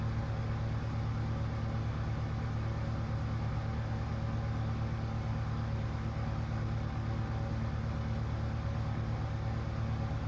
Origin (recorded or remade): recorded